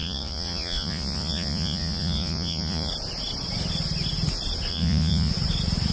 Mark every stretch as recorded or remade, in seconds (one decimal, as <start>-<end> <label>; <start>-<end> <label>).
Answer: 0.0-2.9 remade; 2.9-4.7 recorded; 4.7-5.3 remade; 5.3-5.9 recorded